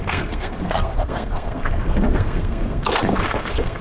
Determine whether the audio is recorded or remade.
remade